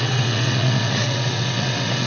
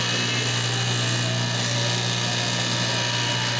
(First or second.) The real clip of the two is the second